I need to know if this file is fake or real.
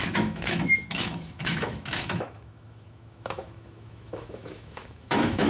fake